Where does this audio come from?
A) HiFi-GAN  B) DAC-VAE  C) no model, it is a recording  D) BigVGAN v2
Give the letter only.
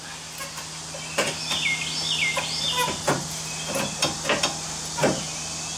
C